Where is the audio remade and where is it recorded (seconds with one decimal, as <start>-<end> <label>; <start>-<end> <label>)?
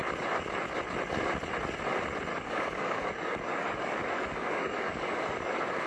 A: 0.0-2.3 recorded; 2.3-5.9 remade